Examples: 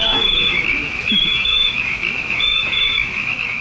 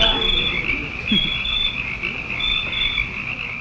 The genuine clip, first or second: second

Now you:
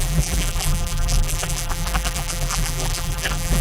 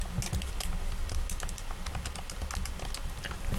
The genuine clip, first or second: second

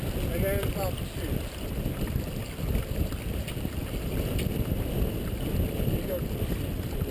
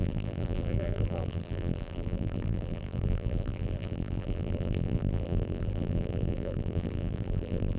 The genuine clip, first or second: first